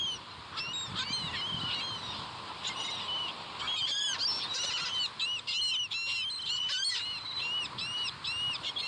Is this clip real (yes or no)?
yes